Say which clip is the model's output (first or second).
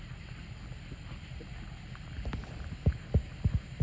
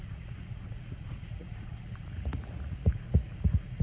second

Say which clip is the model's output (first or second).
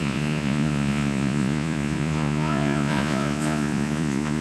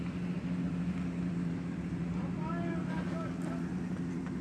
first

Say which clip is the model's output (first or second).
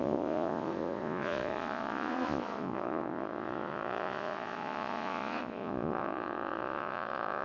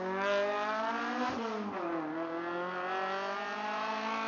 first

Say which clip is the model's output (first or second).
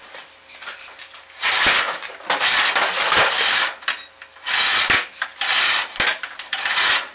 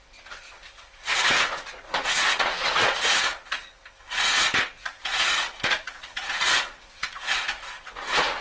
second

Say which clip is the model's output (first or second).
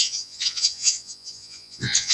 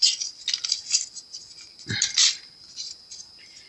first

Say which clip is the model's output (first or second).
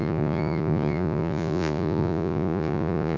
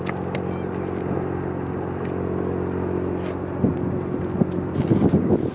first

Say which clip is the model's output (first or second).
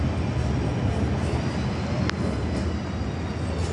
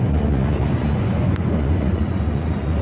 second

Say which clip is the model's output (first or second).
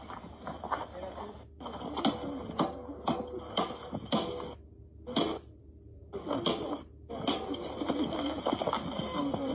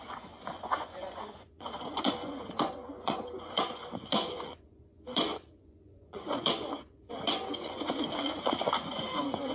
second